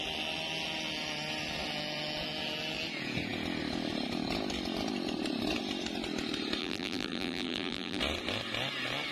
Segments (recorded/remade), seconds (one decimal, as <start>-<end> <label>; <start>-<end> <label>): 0.0-6.6 recorded; 6.6-8.0 remade; 8.0-9.1 recorded